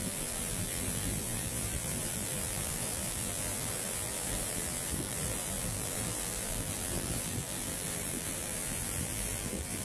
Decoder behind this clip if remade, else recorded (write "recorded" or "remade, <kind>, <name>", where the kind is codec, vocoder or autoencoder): remade, vocoder, BigVGAN v2